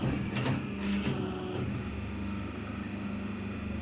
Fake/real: real